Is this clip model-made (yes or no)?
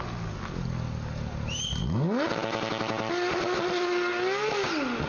no